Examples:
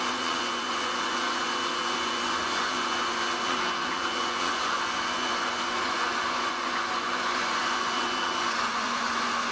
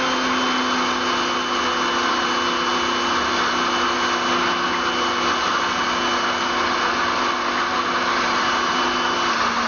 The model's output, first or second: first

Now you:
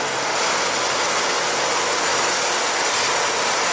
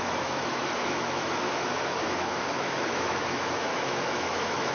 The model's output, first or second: second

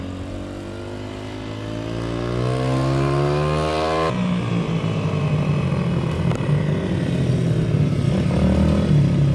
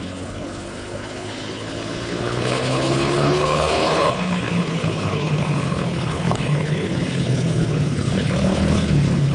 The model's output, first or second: second